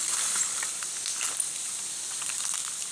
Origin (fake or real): real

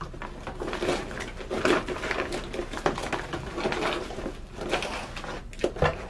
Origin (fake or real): real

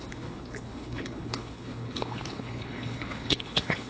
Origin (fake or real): fake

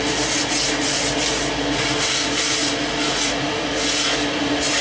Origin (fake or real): real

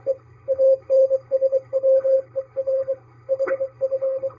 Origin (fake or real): fake